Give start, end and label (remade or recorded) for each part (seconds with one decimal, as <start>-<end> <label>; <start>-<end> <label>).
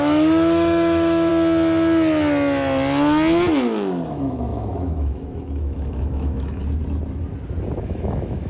0.0-1.3 remade; 1.3-4.1 recorded; 4.1-6.6 remade; 6.6-7.8 recorded; 7.8-8.5 remade